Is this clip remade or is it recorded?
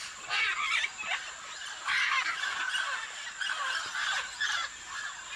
recorded